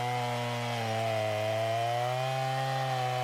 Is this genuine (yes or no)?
yes